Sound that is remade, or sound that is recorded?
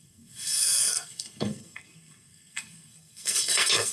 remade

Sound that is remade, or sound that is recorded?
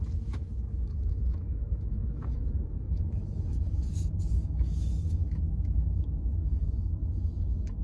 remade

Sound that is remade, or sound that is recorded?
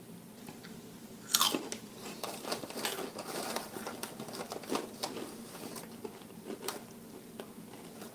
recorded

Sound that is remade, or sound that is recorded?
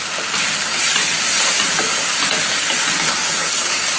recorded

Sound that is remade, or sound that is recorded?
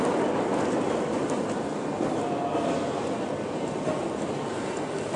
recorded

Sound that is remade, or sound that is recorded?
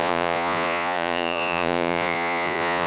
remade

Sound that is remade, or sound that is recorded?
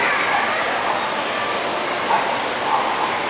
recorded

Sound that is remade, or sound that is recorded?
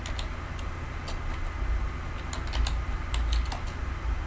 recorded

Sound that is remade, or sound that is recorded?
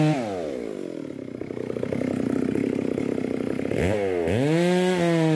recorded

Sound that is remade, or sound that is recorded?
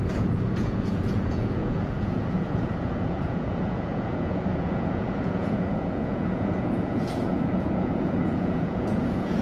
remade